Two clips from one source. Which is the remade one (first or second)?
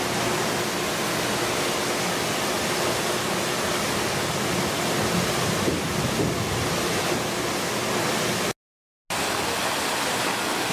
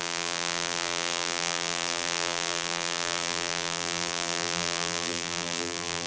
second